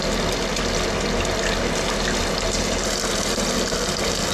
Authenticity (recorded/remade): recorded